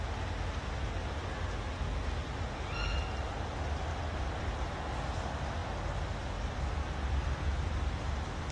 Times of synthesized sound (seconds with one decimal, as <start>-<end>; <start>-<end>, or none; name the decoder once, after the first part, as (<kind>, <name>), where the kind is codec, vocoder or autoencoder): 3.9-4.5 (vocoder, BigVGAN v2); 5.6-7.8